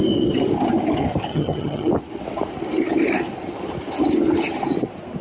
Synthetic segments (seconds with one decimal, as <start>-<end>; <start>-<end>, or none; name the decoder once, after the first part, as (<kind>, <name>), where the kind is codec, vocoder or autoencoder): 1.3-1.9 (vocoder, HiFi-GAN)

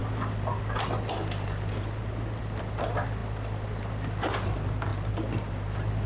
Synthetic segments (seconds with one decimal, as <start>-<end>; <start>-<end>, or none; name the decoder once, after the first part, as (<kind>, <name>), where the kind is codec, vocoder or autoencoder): none

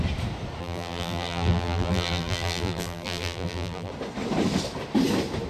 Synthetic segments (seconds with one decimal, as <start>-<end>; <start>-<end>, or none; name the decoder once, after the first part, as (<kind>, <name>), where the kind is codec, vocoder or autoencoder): 0.6-3.9 (vocoder, BigVGAN v2)

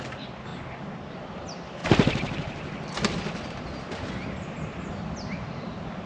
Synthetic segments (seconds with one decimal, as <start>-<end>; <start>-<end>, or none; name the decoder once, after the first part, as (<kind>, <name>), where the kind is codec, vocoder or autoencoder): none

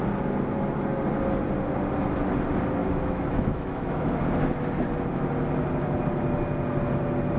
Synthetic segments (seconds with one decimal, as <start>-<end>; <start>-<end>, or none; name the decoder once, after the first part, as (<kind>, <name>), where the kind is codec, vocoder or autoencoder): 2.8-4.2 (autoencoder, DAC-VAE)

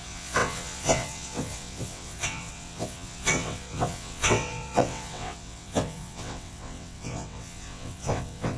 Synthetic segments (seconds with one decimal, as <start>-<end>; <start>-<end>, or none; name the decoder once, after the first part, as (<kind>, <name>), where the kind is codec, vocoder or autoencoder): 0.0-8.6 (vocoder, WaveNeXt)